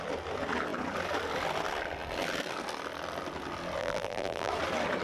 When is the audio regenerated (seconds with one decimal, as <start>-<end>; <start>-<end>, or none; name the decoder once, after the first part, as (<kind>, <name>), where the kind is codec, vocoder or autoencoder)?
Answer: 3.8-4.5 (vocoder, BigVGAN v2)